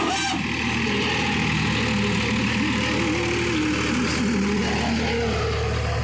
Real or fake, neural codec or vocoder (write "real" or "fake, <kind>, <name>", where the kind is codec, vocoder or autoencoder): real